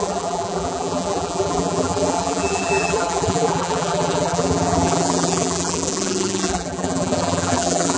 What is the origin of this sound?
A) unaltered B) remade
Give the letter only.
B